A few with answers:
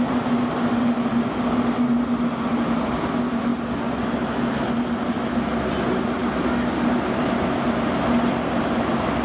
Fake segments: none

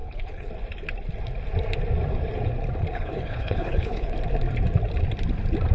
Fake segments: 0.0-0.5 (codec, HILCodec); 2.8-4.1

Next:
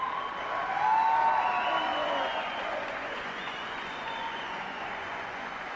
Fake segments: 1.9-5.8 (vocoder, Vocos)

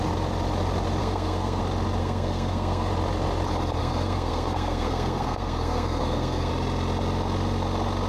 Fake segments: 1.0-1.6 (codec, SNAC); 2.0-2.9; 3.8-6.5

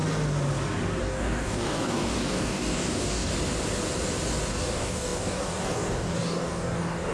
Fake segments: 1.0-3.3 (codec, DAC); 4.5-7.1